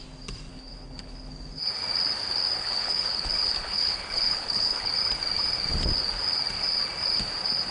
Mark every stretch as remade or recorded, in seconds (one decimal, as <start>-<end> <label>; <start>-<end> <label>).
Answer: 0.0-0.5 recorded; 0.5-1.3 remade; 1.3-2.6 recorded; 2.6-4.9 remade; 4.9-7.7 recorded